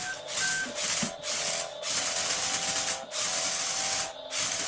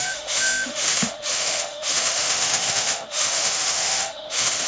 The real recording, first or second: first